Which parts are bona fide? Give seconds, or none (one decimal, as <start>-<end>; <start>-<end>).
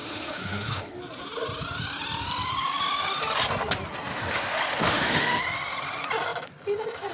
1.0-4.1; 5.4-7.1